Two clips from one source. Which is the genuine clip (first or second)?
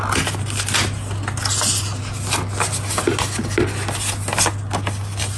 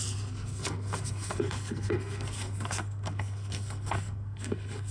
first